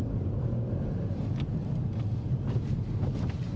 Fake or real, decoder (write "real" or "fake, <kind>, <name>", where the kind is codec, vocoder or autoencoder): real